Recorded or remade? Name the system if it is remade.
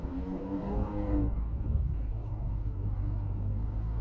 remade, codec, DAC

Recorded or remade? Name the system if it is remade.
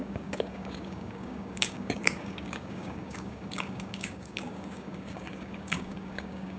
remade, codec, DAC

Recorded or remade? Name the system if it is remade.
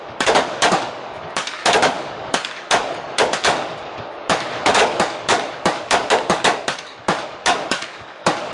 remade, codec, DAC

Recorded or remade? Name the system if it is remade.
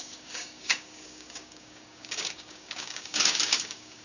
remade, codec, DAC